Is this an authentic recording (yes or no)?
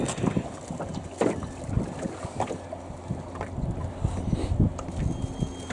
yes